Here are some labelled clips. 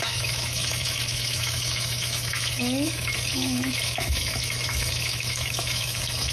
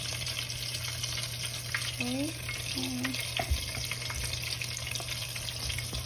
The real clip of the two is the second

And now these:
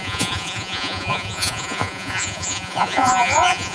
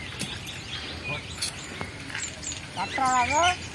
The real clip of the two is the second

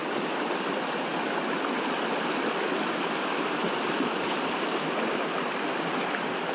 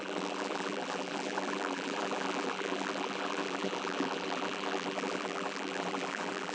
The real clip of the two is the first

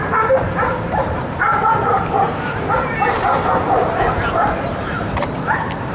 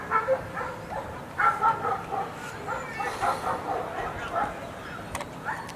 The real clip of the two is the second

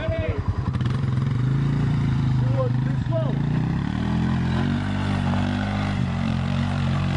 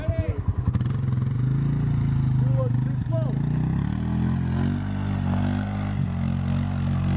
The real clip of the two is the second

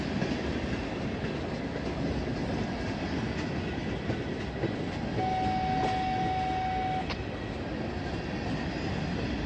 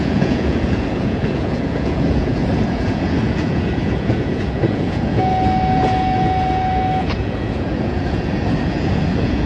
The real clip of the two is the first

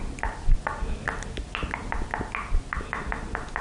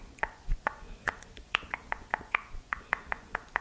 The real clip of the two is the first